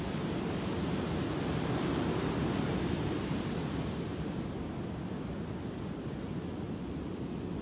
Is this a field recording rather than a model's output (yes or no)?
yes